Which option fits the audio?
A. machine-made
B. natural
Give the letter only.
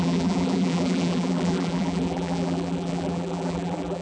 A